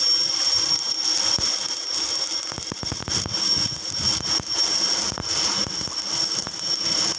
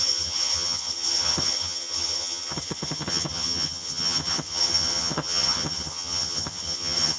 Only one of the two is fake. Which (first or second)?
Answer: second